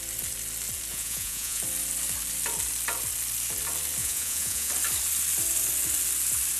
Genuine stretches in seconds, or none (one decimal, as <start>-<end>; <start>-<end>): 0.0-0.9; 1.6-4.0; 4.7-6.6